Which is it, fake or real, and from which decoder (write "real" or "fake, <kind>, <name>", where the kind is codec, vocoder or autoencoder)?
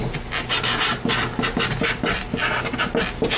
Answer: real